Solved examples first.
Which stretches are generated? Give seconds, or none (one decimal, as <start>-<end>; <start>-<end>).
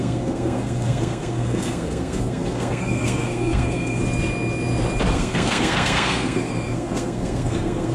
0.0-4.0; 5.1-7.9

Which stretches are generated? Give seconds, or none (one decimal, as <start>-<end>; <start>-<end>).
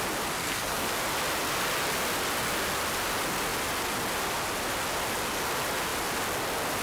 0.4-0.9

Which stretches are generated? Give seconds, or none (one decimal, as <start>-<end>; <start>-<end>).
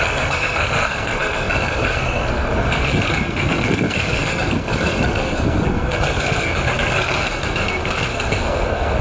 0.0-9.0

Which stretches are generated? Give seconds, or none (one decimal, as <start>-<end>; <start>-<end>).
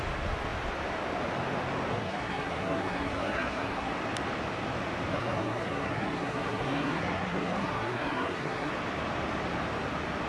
1.9-3.9; 5.1-8.7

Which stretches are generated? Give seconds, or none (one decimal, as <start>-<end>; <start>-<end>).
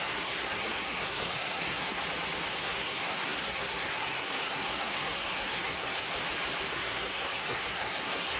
0.0-2.0; 2.5-6.1; 6.7-8.4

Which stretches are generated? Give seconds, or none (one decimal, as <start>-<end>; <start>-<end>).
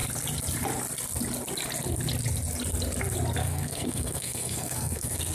3.4-5.3